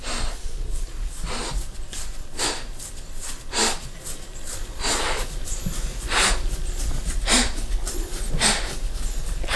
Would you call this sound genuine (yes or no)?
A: yes